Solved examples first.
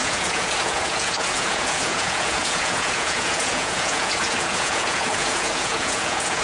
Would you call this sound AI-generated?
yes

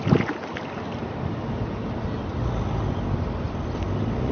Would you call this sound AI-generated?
no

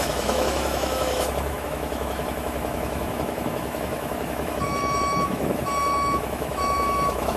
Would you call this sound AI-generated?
yes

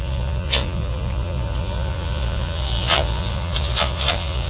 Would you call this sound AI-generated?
yes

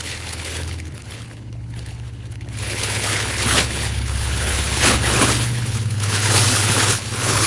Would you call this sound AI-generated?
yes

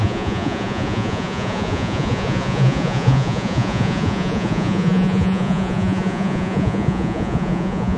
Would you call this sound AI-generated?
yes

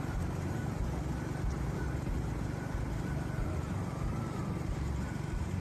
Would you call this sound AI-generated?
yes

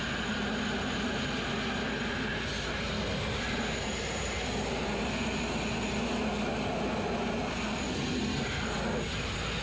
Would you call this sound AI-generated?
no